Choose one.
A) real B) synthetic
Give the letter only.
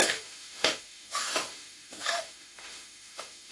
B